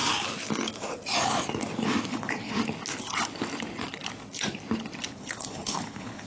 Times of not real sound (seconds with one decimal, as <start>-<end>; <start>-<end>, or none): 2.1-2.6; 5.2-6.3